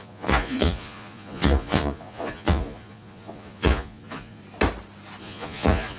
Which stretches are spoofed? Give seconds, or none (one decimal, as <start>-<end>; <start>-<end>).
0.0-4.4; 5.2-6.0